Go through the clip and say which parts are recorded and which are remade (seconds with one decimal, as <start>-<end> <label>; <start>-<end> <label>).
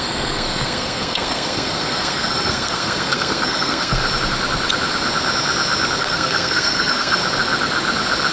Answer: 0.0-4.0 remade; 4.0-6.0 recorded; 6.0-7.2 remade; 7.2-8.3 recorded